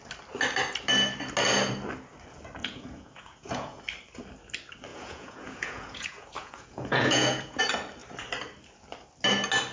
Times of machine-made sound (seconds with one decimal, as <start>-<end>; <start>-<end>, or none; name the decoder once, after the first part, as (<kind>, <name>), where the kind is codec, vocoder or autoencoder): 2.6-3.8 (vocoder, Vocos); 4.9-7.6